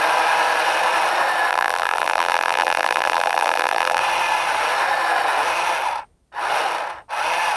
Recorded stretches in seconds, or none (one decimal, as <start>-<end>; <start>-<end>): 0.0-1.5; 4.0-7.6